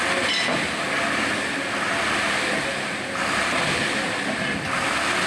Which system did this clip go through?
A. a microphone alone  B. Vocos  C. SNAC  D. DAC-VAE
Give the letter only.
A